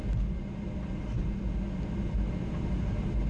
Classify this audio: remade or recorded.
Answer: recorded